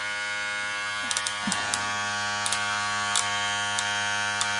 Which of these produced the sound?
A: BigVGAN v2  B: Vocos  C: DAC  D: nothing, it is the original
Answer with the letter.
D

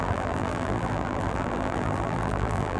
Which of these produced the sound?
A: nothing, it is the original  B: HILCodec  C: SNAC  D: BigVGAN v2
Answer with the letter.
D